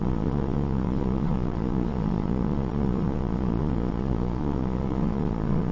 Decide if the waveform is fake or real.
fake